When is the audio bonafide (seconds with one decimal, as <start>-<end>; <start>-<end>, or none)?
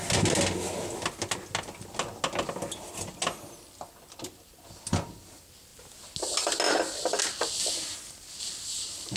0.0-9.2